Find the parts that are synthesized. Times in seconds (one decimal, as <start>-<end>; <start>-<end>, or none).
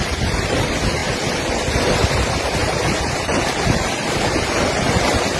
none